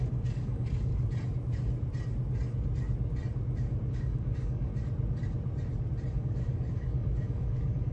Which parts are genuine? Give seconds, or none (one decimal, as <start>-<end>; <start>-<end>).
0.9-3.9; 4.7-6.2